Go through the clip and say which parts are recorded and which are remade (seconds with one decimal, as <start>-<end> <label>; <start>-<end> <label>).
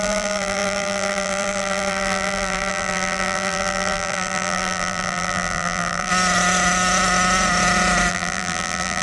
0.0-6.1 remade; 6.1-8.1 recorded; 8.1-9.0 remade